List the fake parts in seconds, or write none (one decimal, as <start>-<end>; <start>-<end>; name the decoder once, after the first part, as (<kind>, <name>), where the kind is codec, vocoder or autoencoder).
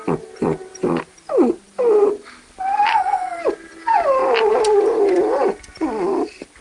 2.9-3.4 (codec, SNAC)